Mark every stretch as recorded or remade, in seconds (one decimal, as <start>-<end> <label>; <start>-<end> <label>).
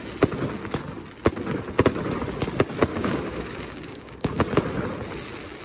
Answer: 0.0-2.9 recorded; 2.9-4.4 remade; 4.4-5.6 recorded